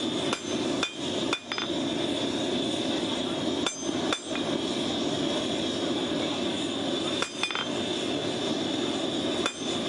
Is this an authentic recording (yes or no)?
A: yes